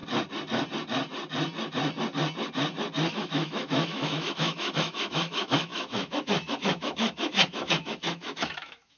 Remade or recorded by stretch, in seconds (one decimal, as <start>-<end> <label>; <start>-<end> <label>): 0.0-3.1 recorded; 3.1-9.0 remade